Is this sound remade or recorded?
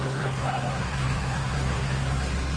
remade